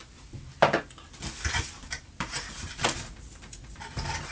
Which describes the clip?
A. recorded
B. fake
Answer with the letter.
A